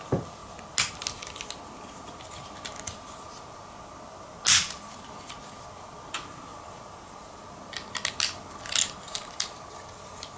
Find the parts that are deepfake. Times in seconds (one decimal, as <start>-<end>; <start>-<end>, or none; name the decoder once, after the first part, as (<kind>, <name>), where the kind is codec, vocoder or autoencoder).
none